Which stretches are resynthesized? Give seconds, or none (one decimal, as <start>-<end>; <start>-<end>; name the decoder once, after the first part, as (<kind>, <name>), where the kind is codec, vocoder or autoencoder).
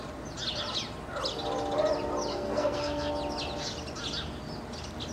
2.3-3.1 (codec, SNAC)